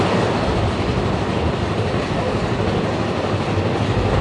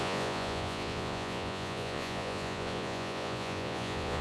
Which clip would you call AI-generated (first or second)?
second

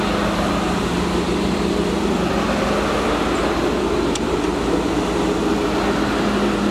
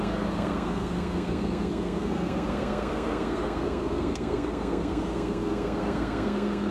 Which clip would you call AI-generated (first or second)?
second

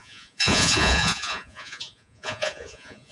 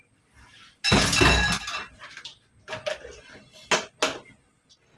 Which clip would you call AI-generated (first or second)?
first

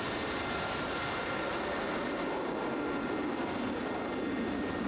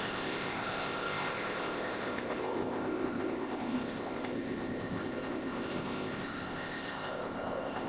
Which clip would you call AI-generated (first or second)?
second